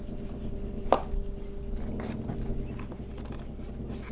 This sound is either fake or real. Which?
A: real